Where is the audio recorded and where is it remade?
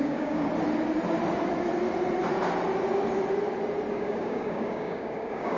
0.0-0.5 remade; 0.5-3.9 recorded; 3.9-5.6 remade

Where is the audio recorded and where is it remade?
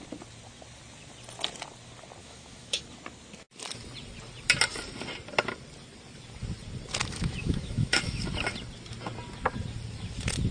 0.0-2.2 recorded; 2.2-2.8 remade; 2.8-7.0 recorded; 7.0-8.2 remade; 8.2-10.5 recorded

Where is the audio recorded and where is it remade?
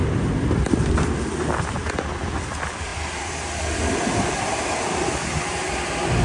0.0-1.7 remade; 1.7-2.9 recorded; 2.9-6.2 remade